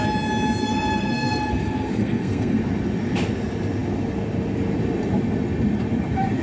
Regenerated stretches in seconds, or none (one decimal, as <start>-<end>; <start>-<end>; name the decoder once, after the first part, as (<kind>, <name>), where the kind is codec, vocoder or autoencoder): 0.6-2.6 (codec, SNAC)